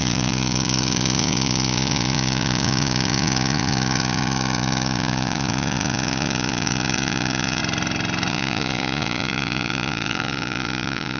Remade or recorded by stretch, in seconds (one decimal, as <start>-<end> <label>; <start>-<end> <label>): 0.0-7.6 remade; 7.6-8.3 recorded; 8.3-11.2 remade